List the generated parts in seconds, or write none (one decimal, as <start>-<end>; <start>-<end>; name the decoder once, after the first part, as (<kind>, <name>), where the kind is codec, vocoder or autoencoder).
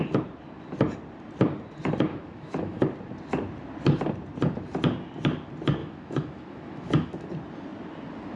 2.1-2.8 (autoencoder, DAC-VAE); 5.8-7.3